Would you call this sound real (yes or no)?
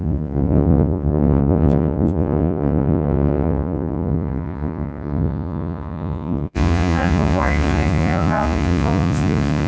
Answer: no